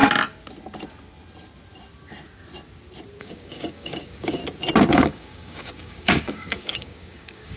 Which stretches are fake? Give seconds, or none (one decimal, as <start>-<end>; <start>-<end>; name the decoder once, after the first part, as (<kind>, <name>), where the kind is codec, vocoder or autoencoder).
3.2-4.4 (codec, DAC); 4.9-7.6